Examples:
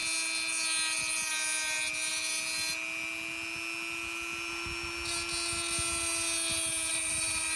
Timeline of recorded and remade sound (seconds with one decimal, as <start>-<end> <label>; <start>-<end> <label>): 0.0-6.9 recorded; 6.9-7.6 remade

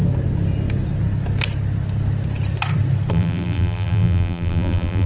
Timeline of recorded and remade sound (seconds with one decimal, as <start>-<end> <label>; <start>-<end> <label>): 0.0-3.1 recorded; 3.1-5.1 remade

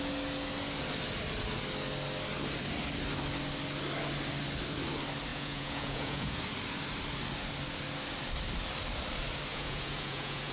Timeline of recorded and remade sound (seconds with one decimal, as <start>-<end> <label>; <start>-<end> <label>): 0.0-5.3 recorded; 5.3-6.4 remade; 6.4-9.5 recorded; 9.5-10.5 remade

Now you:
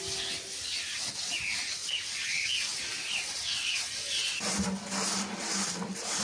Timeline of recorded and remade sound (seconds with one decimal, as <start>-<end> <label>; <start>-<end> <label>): 0.0-6.2 recorded

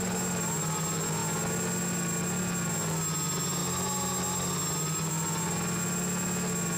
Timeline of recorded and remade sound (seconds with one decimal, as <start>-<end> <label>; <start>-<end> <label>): 0.0-6.8 recorded

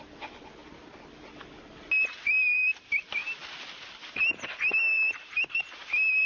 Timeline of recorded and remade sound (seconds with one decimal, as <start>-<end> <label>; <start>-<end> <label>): 0.0-0.6 remade; 0.6-2.2 recorded; 2.2-3.2 remade; 3.2-4.7 recorded; 4.7-6.3 remade